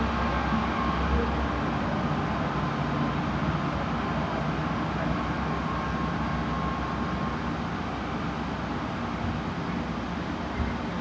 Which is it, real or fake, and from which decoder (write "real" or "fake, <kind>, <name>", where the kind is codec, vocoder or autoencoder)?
real